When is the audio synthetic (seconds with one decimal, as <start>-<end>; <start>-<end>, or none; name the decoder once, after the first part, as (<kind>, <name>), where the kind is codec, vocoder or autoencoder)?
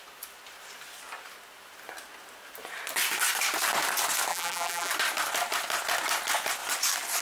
4.3-4.9 (vocoder, BigVGAN v2)